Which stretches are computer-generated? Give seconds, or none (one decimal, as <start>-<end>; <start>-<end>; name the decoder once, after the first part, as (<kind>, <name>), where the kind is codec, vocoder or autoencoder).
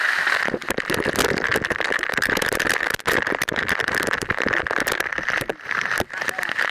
1.5-5.5 (vocoder, BigVGAN v2)